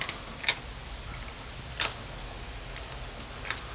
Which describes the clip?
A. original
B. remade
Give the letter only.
A